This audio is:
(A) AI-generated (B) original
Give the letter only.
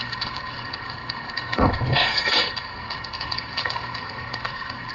A